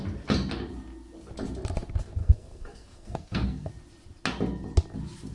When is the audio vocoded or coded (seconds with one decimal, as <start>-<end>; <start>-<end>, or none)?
2.2-3.7